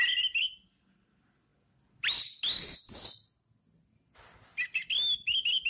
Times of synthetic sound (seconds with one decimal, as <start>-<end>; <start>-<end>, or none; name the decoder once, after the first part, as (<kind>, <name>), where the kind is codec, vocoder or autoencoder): none